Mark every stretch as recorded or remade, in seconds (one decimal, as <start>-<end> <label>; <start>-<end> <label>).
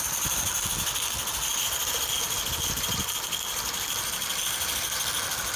0.0-5.6 recorded